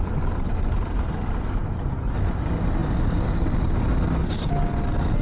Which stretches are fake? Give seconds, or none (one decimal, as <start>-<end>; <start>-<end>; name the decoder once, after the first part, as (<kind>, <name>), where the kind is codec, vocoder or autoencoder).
none